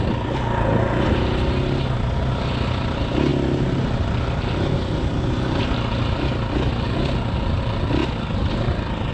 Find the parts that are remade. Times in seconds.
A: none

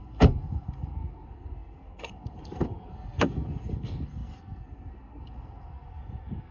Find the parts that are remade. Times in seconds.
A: 0.0-6.5

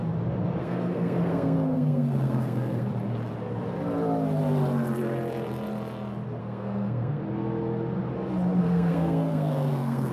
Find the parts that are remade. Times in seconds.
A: 0.6-2.9; 6.4-7.2; 8.6-10.1

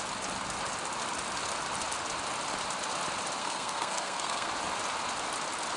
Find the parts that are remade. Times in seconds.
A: 3.4-4.5

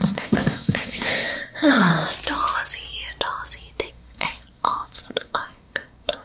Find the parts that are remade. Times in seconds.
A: 0.0-1.9; 3.9-6.2